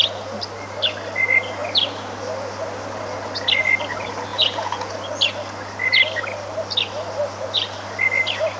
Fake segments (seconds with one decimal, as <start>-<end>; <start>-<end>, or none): 4.3-4.9

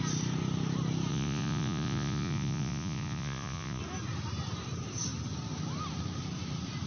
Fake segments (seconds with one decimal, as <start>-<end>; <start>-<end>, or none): 1.1-3.8